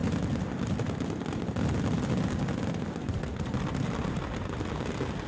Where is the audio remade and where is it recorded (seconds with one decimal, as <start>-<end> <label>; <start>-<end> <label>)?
0.0-5.3 recorded